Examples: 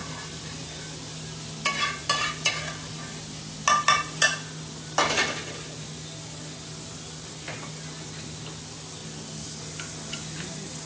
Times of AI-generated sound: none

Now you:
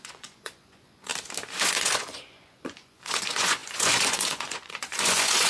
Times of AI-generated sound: 0.0-1.1 (vocoder, Vocos); 1.6-5.5

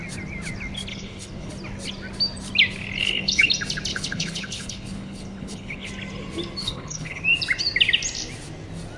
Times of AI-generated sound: 0.9-1.5 (codec, HILCodec); 3.0-3.5; 3.9-5.9; 6.6-7.2

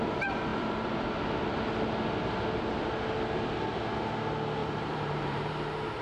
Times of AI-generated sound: 4.6-5.5 (vocoder, BigVGAN v2)